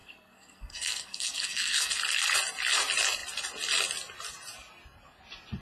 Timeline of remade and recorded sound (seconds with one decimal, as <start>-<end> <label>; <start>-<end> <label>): 0.0-1.9 remade; 1.9-5.6 recorded